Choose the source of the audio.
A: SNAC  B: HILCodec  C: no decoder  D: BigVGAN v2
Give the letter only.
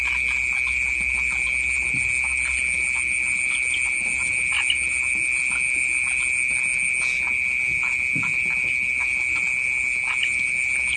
C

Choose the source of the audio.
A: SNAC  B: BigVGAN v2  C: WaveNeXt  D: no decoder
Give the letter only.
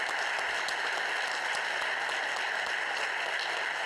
D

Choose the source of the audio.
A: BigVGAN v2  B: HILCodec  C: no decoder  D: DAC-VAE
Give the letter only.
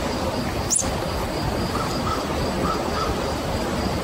C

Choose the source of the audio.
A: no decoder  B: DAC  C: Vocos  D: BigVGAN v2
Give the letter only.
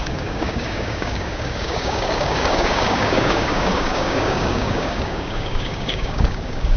B